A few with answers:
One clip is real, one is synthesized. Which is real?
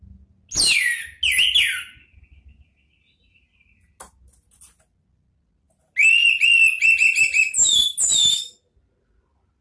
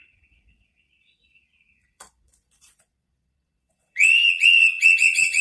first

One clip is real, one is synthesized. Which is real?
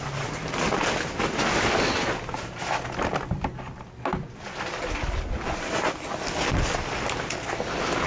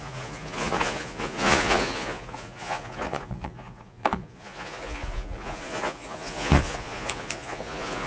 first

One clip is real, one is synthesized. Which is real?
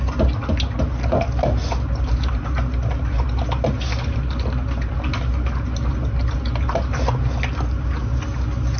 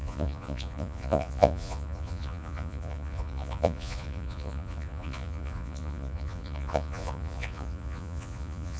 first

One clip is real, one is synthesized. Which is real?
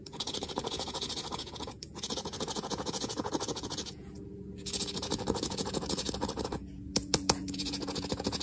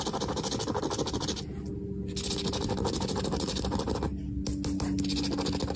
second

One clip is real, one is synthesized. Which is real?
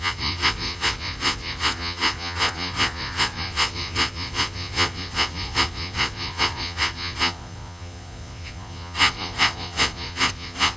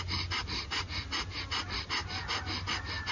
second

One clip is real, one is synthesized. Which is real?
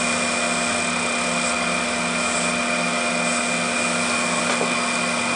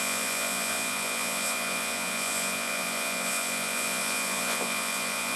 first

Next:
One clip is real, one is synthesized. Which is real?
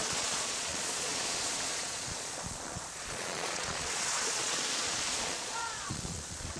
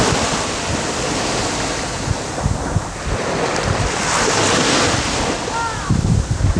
second